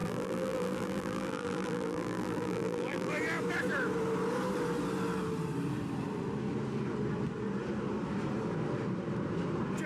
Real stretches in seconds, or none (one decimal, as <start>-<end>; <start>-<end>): 3.1-9.9